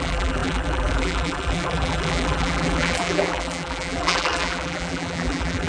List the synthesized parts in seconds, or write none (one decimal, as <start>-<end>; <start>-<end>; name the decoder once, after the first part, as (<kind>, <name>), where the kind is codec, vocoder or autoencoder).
0.0-5.7 (vocoder, BigVGAN v2)